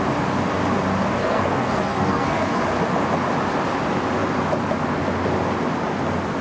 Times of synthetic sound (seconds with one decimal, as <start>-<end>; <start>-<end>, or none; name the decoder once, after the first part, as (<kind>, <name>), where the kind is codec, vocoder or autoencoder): 1.2-2.6 (codec, SNAC)